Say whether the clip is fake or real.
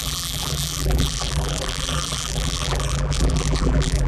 fake